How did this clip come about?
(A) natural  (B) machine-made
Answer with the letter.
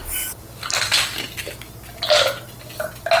A